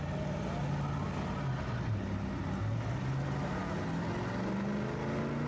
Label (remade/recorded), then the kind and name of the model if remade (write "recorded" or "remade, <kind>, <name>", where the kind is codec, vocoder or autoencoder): recorded